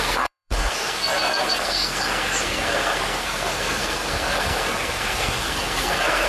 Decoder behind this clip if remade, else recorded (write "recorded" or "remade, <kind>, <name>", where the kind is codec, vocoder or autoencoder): remade, codec, SNAC